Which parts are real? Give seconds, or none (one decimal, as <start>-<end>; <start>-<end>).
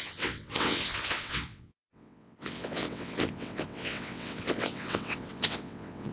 none